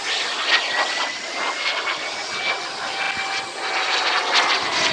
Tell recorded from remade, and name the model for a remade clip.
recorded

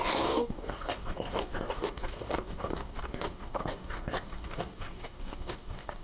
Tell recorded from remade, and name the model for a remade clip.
remade, codec, DAC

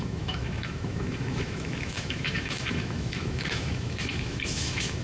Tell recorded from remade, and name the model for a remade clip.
remade, autoencoder, DAC-VAE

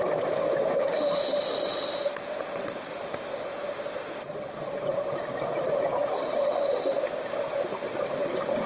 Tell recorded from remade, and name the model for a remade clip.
recorded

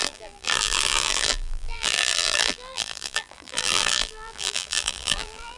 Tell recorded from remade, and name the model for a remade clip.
remade, vocoder, BigVGAN v2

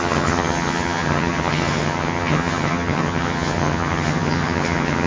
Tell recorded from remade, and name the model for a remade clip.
remade, vocoder, HiFi-GAN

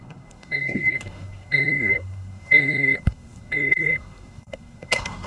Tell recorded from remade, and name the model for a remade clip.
remade, codec, SNAC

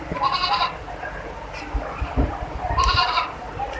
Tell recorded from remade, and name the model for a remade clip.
recorded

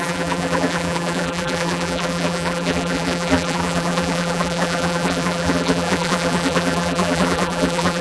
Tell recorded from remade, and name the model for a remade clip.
remade, vocoder, BigVGAN v2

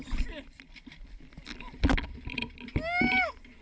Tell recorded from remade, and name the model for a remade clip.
recorded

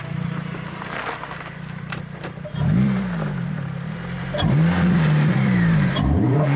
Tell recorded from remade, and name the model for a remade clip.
remade, vocoder, BigVGAN v2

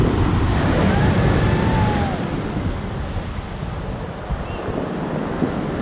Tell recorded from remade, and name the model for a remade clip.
recorded